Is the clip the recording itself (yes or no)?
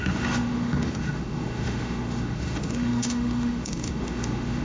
no